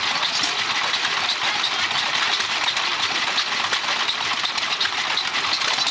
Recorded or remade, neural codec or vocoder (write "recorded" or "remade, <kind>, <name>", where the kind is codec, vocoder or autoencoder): recorded